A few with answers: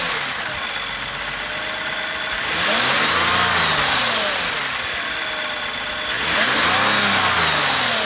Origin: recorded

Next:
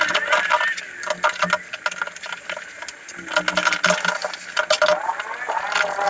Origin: recorded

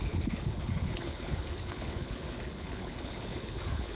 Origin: remade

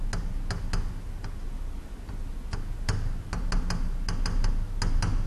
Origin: recorded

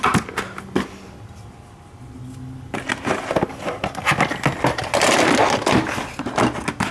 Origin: recorded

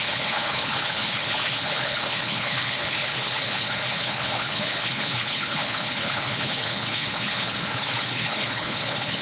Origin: remade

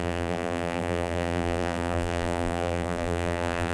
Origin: remade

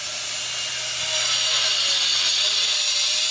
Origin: recorded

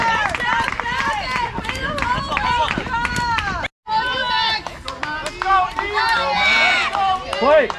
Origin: recorded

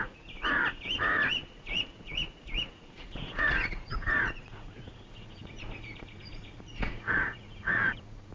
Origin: remade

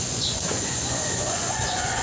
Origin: remade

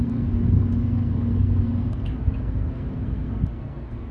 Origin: remade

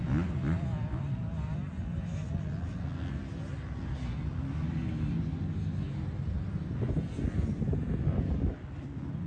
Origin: recorded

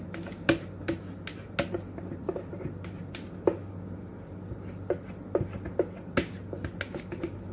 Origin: recorded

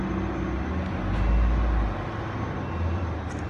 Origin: recorded